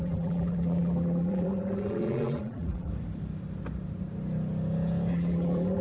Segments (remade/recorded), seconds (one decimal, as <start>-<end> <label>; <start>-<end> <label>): 0.0-2.9 remade; 2.9-5.1 recorded; 5.1-5.8 remade